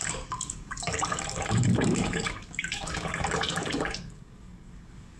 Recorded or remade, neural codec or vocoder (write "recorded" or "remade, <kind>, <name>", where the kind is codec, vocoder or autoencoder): remade, codec, DAC